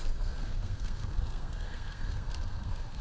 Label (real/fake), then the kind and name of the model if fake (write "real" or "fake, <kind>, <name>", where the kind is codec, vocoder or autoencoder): fake, codec, SNAC